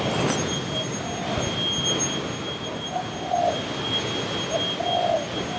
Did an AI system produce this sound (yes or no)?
no